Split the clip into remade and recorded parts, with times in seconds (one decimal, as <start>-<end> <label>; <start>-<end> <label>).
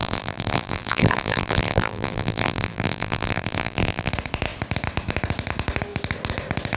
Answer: 0.0-4.1 remade; 4.1-6.8 recorded